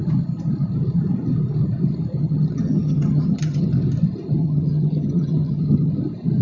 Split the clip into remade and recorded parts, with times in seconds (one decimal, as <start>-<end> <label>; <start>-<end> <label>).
0.0-2.2 recorded; 2.2-3.7 remade; 3.7-4.4 recorded; 4.4-5.9 remade; 5.9-6.4 recorded